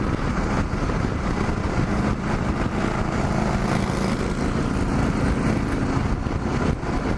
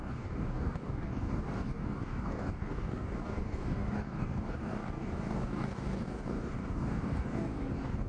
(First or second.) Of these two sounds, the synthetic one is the second